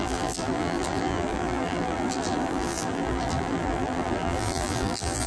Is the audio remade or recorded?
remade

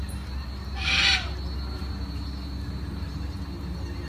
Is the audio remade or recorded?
recorded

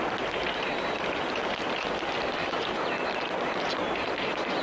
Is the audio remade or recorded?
recorded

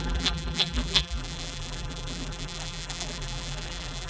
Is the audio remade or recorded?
remade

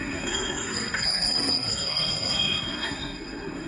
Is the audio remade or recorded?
remade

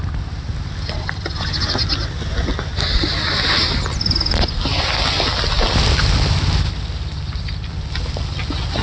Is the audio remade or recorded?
recorded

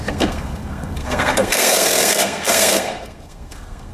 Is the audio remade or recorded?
remade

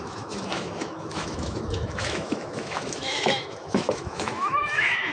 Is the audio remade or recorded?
remade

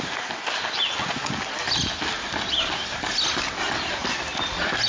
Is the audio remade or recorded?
recorded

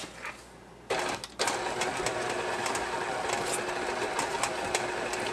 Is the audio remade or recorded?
recorded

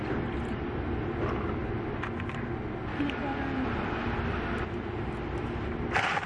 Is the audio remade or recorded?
recorded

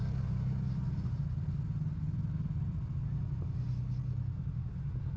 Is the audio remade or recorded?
recorded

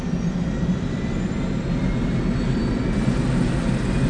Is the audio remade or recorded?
recorded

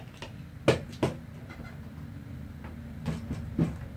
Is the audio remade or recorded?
recorded